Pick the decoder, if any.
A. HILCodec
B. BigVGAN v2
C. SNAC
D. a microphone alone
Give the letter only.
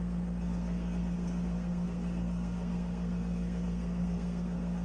C